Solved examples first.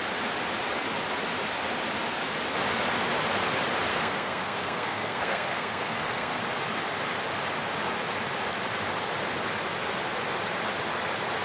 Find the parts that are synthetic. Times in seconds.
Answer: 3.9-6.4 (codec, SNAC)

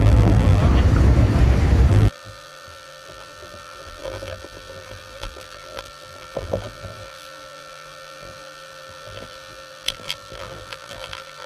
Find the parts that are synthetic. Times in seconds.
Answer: 0.0-0.6 (vocoder, BigVGAN v2); 1.9-11.5

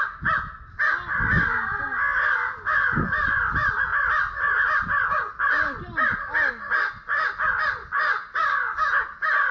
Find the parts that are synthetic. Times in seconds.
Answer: none

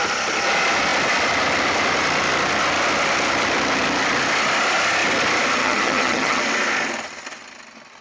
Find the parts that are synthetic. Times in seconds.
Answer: 5.6-6.4 (vocoder, HiFi-GAN)

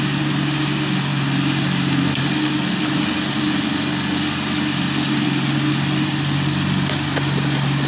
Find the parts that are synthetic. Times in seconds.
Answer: none